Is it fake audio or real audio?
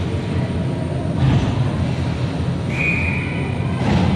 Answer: real